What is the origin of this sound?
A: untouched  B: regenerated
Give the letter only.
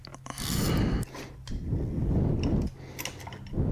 A